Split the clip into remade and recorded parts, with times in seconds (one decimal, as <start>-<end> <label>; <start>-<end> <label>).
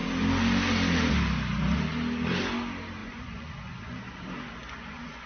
0.0-3.0 recorded; 3.0-5.3 remade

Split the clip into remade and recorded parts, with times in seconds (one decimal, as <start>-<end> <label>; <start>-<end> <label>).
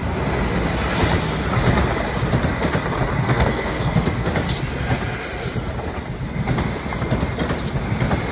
0.0-3.2 recorded; 3.2-4.3 remade; 4.3-8.3 recorded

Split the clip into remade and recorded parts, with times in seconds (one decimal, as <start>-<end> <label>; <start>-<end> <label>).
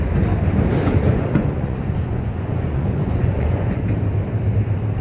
0.0-0.8 recorded; 0.8-3.8 remade; 3.8-5.0 recorded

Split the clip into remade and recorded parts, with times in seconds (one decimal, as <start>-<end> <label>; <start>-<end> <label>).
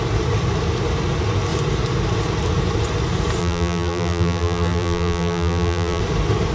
0.0-3.4 recorded; 3.4-6.0 remade; 6.0-6.5 recorded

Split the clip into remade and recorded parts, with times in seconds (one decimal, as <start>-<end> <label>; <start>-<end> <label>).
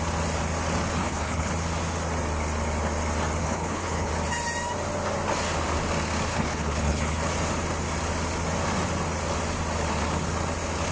0.0-1.0 recorded; 1.0-1.5 remade; 1.5-3.4 recorded; 3.4-4.1 remade; 4.1-6.3 recorded; 6.3-7.2 remade; 7.2-10.9 recorded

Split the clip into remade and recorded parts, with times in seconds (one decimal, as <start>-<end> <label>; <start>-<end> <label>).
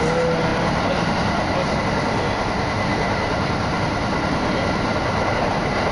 0.0-0.5 recorded; 0.5-1.8 remade; 1.8-2.9 recorded; 2.9-3.8 remade; 3.8-5.9 recorded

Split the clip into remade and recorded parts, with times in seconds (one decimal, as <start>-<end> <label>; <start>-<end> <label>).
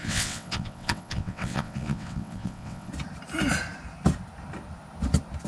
0.0-2.9 remade; 2.9-5.5 recorded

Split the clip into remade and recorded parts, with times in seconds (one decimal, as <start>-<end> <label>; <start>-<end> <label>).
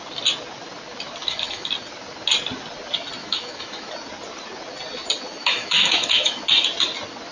0.0-1.2 recorded; 1.2-1.7 remade; 1.7-3.2 recorded; 3.2-3.9 remade; 3.9-5.4 recorded; 5.4-6.4 remade; 6.4-7.3 recorded